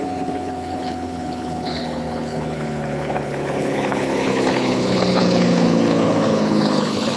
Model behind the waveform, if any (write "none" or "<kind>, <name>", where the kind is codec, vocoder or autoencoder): codec, HILCodec